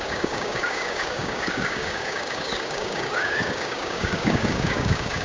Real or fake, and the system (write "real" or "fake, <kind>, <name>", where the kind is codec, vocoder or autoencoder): fake, codec, DAC